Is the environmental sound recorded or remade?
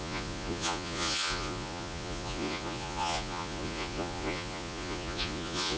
remade